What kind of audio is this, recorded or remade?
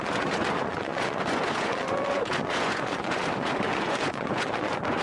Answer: remade